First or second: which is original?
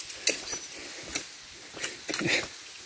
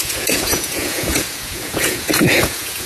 first